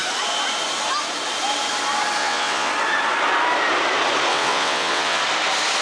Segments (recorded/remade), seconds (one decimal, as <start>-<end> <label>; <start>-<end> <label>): 0.0-2.2 recorded; 2.2-2.7 remade; 2.7-4.3 recorded; 4.3-5.2 remade; 5.2-5.8 recorded